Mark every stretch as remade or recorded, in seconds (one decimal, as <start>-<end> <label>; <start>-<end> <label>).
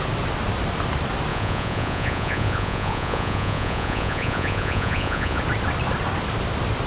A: 0.0-1.3 recorded; 1.3-5.4 remade; 5.4-6.9 recorded